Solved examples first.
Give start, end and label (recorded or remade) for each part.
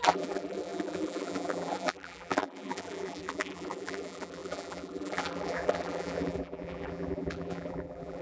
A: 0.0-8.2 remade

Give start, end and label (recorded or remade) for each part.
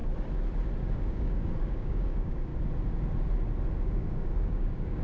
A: 0.0-0.9 recorded; 0.9-2.5 remade; 2.5-3.7 recorded; 3.7-5.0 remade